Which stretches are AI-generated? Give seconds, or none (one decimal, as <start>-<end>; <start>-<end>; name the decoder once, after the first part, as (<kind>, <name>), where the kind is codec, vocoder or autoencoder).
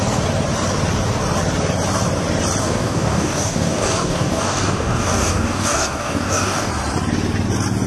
2.6-6.7 (codec, DAC)